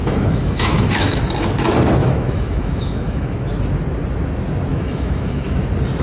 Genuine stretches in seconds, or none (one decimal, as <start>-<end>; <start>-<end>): 1.2-2.0; 3.5-4.7; 5.6-6.0